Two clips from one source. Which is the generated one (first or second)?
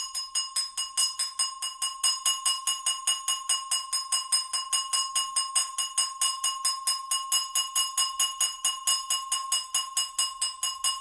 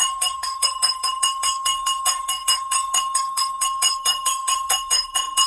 second